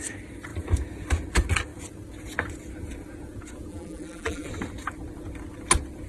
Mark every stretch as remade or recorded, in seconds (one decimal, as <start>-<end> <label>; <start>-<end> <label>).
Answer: 0.0-3.7 recorded; 3.7-4.5 remade; 4.5-6.1 recorded